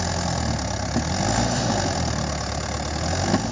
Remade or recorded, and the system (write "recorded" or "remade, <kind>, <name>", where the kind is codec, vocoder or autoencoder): recorded